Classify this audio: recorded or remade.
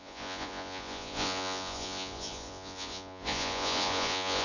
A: remade